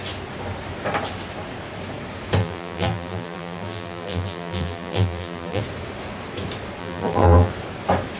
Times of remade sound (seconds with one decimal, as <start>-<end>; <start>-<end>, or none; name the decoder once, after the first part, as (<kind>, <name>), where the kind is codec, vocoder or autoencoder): 2.4-5.6 (vocoder, BigVGAN v2); 6.8-7.5